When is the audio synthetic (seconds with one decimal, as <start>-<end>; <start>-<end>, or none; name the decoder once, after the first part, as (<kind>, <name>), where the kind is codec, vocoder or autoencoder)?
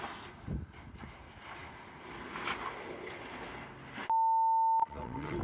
4.8-5.4 (vocoder, WaveNeXt)